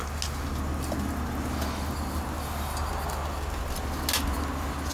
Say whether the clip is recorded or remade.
recorded